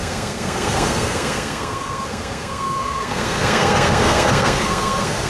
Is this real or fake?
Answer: fake